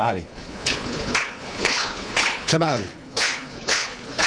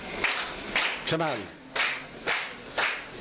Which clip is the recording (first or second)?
second